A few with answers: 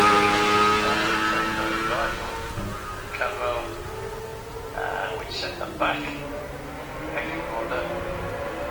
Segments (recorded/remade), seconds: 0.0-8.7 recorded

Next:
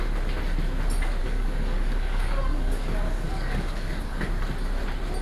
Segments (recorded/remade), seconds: 0.0-1.2 recorded; 1.2-4.3 remade; 4.3-5.2 recorded

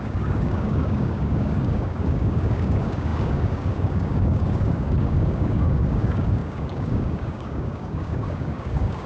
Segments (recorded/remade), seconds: 0.0-9.1 remade

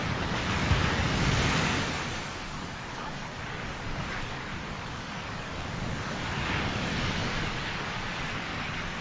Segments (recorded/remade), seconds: 0.0-9.0 remade